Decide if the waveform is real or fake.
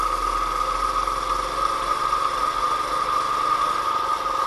real